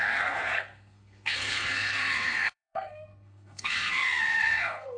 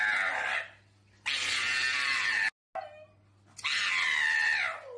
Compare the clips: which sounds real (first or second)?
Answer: second